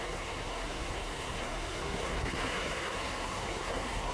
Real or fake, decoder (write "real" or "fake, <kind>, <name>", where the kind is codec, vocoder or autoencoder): fake, codec, SNAC